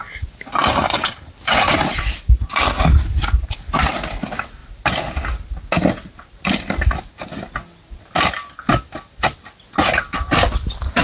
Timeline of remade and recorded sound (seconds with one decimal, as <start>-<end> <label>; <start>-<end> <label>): 0.0-11.0 recorded